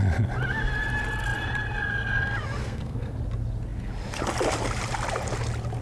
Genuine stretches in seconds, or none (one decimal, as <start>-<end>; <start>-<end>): 0.0-2.6; 3.1-5.8